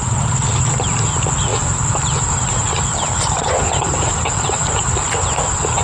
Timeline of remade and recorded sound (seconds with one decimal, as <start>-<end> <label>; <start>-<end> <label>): 0.0-1.5 recorded; 1.5-5.0 remade; 5.0-5.8 recorded